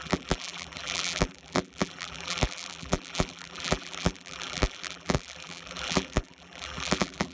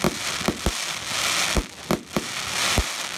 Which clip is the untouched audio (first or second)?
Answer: second